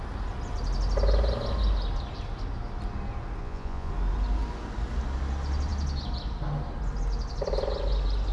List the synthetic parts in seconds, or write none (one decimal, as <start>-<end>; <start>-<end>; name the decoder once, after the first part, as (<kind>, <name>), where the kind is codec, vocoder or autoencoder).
3.4-3.9 (vocoder, Vocos)